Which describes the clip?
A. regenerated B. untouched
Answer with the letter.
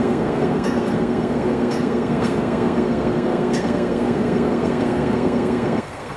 A